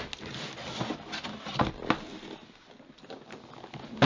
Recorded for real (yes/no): yes